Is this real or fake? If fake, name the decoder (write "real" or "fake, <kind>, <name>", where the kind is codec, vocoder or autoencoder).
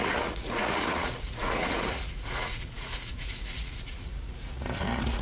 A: fake, vocoder, Vocos